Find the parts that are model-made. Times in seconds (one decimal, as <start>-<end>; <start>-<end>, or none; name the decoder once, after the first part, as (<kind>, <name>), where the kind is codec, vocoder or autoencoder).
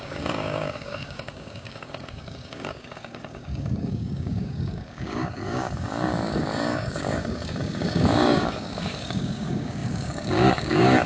0.0-11.1 (codec, DAC)